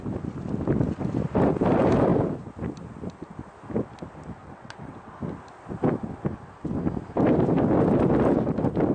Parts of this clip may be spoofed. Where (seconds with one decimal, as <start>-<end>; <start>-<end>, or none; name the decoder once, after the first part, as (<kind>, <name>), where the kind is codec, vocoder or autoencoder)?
4.4-5.1 (vocoder, WaveNeXt)